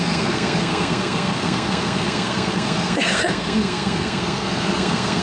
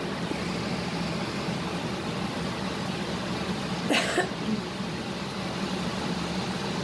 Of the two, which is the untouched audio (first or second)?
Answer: second